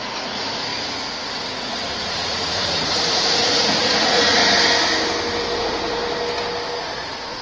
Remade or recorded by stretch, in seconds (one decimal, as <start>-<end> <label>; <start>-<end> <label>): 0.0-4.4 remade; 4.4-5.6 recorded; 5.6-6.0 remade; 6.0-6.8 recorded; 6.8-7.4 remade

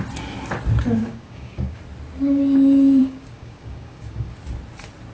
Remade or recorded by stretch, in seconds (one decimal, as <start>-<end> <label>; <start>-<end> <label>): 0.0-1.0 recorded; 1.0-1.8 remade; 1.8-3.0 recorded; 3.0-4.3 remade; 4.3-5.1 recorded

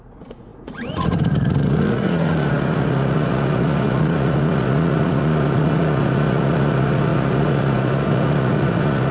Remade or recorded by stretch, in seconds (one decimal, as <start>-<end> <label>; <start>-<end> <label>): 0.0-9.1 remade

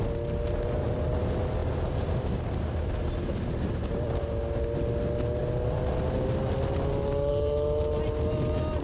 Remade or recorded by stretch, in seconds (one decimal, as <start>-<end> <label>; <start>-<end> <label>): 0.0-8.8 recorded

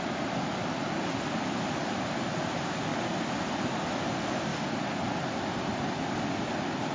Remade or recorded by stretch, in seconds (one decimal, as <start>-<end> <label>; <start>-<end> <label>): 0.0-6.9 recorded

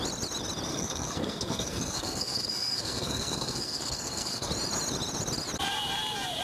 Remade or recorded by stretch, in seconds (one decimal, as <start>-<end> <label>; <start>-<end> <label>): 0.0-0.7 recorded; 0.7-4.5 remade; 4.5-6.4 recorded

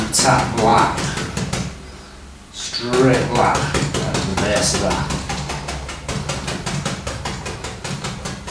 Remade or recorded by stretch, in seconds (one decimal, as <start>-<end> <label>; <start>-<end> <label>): 0.0-0.7 recorded; 0.7-1.4 remade; 1.4-8.5 recorded

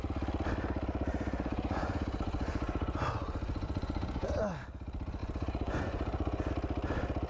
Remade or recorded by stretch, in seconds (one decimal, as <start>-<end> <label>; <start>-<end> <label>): 0.0-1.1 recorded; 1.1-4.4 remade; 4.4-5.2 recorded; 5.2-6.5 remade; 6.5-7.3 recorded